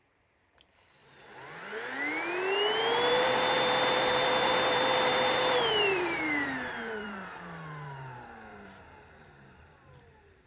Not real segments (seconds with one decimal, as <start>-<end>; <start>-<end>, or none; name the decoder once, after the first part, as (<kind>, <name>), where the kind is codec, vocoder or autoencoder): 0.0-1.0 (vocoder, BigVGAN v2); 3.1-10.5